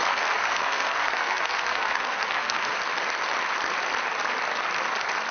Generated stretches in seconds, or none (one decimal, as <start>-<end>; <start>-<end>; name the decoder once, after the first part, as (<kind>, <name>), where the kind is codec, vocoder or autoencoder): 0.0-2.7 (codec, SNAC)